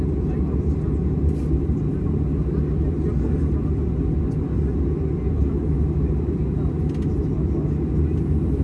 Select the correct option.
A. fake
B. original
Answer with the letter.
B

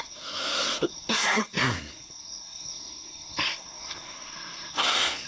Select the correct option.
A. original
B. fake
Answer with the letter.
B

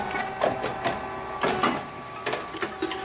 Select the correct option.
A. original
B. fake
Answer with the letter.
A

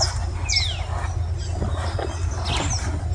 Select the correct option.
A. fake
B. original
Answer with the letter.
B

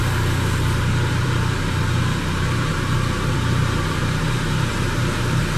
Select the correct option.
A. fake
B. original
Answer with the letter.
A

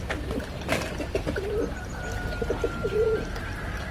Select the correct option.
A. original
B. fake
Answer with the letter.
A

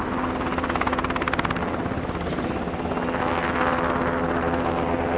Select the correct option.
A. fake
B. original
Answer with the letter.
B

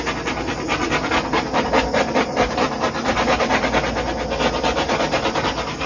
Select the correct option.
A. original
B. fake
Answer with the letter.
A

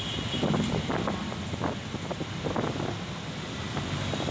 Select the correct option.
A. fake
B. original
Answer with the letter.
B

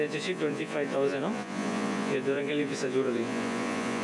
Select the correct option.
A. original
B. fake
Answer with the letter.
B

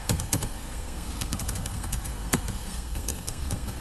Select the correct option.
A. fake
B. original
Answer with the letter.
A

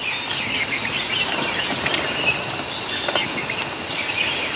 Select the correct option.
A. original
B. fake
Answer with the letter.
A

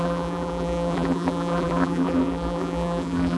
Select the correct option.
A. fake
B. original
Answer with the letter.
A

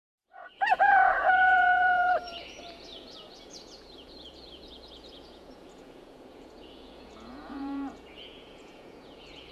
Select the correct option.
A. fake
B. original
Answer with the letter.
A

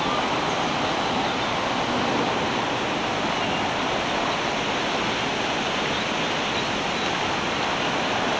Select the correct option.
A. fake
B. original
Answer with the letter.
B